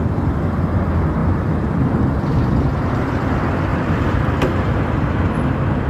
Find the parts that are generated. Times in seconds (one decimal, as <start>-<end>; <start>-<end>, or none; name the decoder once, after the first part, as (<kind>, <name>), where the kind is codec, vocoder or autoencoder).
1.2-3.3 (vocoder, BigVGAN v2); 3.7-5.2